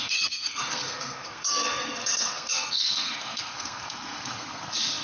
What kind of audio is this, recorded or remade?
remade